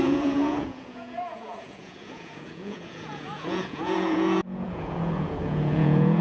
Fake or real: fake